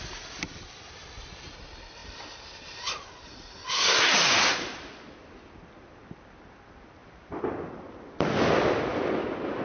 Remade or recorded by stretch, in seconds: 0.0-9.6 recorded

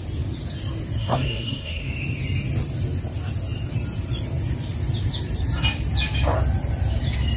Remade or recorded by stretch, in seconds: 0.0-1.0 recorded; 1.0-1.9 remade; 1.9-7.4 recorded

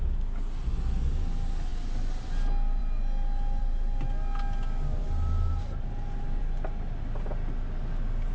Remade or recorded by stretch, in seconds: 0.0-3.6 recorded; 3.6-4.1 remade; 4.1-5.0 recorded; 5.0-6.4 remade; 6.4-8.3 recorded

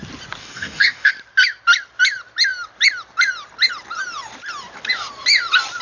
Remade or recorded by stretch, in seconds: 0.0-0.4 recorded; 0.4-1.1 remade; 1.1-5.8 recorded

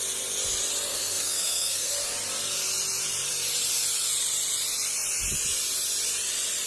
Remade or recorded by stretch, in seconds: 0.0-0.9 recorded; 0.9-1.9 remade; 1.9-6.7 recorded